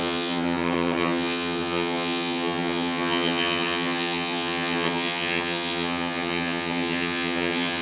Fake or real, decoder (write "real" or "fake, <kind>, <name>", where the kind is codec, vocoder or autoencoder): fake, vocoder, HiFi-GAN